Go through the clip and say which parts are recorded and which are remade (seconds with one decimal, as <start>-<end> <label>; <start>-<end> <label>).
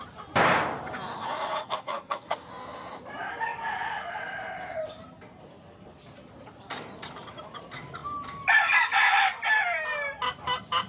0.0-1.6 recorded; 1.6-2.5 remade; 2.5-10.9 recorded